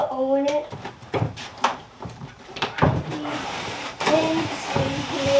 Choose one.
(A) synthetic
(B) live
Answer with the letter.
A